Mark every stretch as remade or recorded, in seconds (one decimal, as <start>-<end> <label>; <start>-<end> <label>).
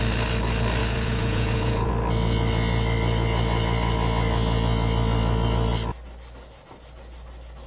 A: 0.0-0.8 recorded; 0.8-1.9 remade; 1.9-7.7 recorded